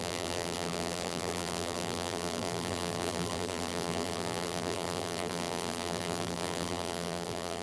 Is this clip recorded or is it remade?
remade